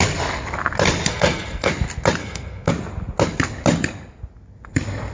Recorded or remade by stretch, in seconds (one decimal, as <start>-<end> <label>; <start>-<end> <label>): 0.0-1.1 recorded; 1.1-1.7 remade; 1.7-2.2 recorded; 2.2-2.7 remade; 2.7-5.1 recorded